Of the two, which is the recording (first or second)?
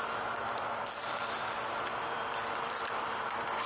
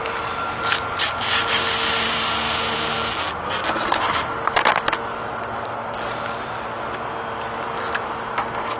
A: second